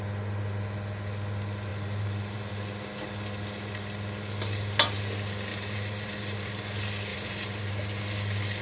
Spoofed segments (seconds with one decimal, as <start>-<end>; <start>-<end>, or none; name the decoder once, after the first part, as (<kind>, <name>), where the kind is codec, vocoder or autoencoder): 1.7-2.5 (vocoder, BigVGAN v2); 5.5-6.5; 7.1-8.0